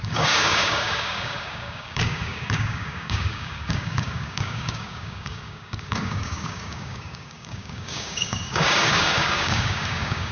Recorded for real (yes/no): no